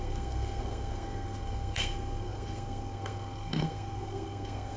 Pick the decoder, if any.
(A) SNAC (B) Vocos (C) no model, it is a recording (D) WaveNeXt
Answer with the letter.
A